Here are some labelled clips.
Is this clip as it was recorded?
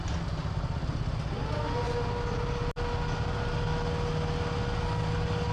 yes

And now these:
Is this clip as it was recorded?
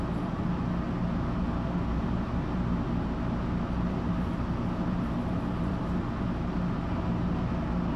yes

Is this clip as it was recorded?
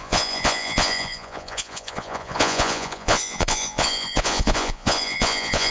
no